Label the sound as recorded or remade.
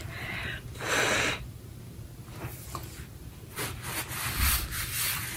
remade